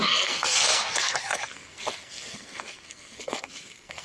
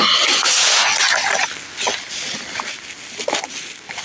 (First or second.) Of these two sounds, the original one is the second